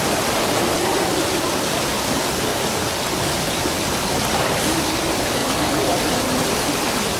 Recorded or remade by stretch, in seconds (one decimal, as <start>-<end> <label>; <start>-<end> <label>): 0.0-7.2 recorded